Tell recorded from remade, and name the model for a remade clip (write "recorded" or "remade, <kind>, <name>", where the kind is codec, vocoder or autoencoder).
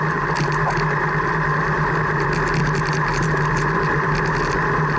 recorded